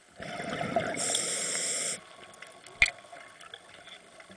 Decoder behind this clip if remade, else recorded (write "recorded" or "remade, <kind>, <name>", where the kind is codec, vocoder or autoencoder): recorded